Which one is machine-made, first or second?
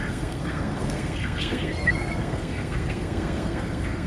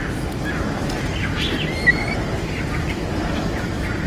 first